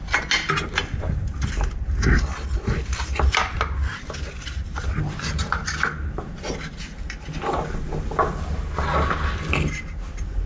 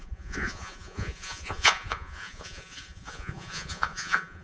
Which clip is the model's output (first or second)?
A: second